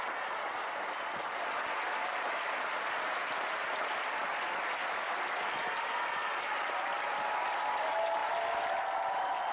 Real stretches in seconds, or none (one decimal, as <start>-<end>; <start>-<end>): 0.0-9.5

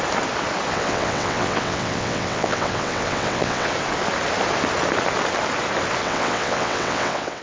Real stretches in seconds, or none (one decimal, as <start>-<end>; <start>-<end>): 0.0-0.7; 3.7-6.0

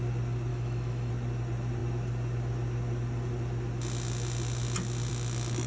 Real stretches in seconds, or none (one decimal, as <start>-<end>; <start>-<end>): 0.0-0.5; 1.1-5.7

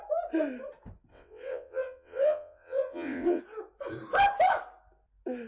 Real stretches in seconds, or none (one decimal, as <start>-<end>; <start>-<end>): 0.0-1.1; 3.4-5.5

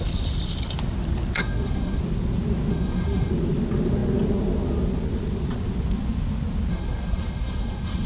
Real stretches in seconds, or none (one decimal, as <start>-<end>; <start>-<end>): 0.0-1.4; 2.0-2.7; 3.3-6.7

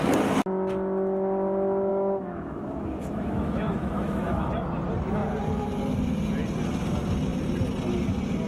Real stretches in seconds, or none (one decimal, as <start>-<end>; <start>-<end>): 0.0-1.9; 4.5-8.5

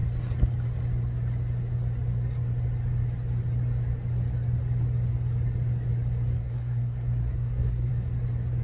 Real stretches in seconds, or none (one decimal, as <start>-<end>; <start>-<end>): 0.0-6.4; 7.9-8.6

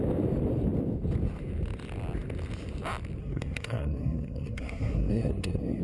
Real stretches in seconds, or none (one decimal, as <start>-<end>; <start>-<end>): 0.0-3.2